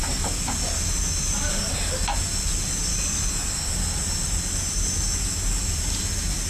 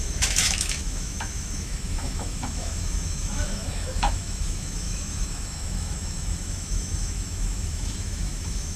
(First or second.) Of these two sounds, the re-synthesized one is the second